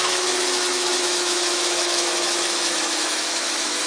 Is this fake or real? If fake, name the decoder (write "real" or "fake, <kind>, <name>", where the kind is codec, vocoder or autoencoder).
fake, autoencoder, DAC-VAE